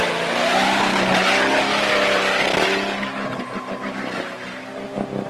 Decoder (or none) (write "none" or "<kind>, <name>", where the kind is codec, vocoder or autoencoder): none